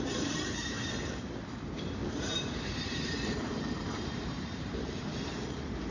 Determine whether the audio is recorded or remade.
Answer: remade